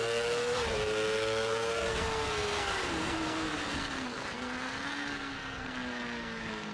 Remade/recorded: remade